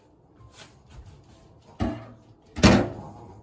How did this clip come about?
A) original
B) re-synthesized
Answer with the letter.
A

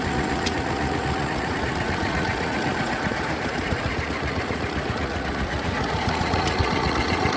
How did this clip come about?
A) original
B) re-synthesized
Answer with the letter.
B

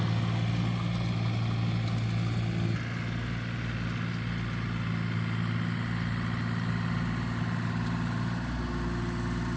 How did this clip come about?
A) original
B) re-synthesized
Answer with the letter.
A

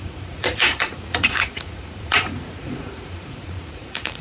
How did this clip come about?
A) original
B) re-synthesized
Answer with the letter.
B